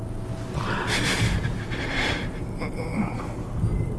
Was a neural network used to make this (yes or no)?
no